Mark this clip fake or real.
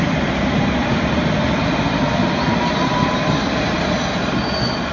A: real